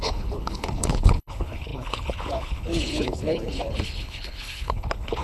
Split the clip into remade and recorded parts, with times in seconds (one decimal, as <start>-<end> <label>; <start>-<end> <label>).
0.0-5.2 remade

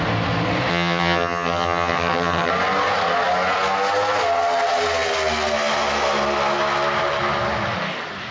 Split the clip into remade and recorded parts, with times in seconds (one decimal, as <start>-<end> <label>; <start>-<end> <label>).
0.0-0.7 recorded; 0.7-2.5 remade; 2.5-8.3 recorded

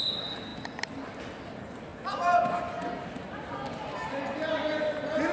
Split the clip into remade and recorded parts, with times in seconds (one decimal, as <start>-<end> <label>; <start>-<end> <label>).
0.0-1.9 remade; 1.9-4.5 recorded; 4.5-5.3 remade

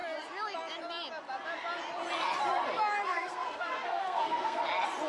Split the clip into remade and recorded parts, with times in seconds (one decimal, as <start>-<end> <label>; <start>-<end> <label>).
0.0-3.0 recorded; 3.0-4.6 remade; 4.6-5.1 recorded

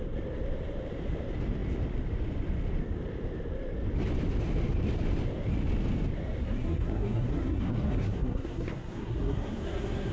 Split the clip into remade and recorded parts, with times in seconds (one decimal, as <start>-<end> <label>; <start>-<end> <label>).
0.0-6.4 recorded; 6.4-10.1 remade

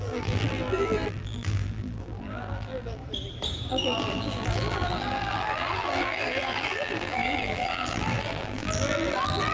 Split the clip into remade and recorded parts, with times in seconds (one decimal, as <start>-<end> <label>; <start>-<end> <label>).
0.0-3.0 remade; 3.0-3.7 recorded; 3.7-9.5 remade

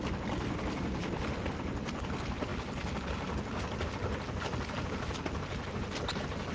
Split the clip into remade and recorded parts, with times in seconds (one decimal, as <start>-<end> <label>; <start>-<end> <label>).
0.0-6.5 recorded

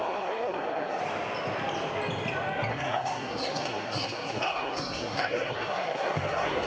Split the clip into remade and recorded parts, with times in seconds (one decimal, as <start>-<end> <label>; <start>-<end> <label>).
0.0-1.0 remade; 1.0-2.7 recorded; 2.7-6.7 remade